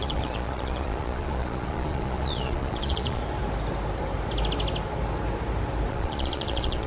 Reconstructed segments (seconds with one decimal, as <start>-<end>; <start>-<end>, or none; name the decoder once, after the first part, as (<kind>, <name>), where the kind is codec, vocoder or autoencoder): 0.0-3.2 (vocoder, Vocos); 5.9-6.9